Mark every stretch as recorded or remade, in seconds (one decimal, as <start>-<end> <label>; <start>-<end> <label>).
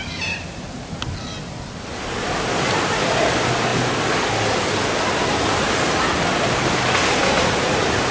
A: 0.0-8.1 recorded